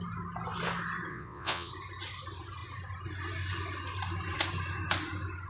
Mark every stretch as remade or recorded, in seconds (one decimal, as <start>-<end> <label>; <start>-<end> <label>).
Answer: 0.0-1.1 recorded; 1.1-1.7 remade; 1.7-5.5 recorded